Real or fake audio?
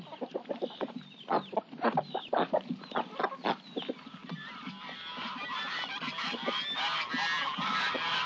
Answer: real